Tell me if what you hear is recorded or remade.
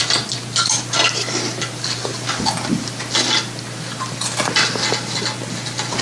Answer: recorded